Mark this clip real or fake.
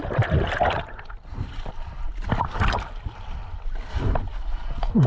real